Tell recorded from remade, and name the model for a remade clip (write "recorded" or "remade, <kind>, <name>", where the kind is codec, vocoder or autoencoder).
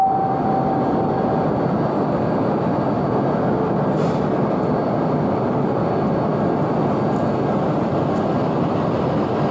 recorded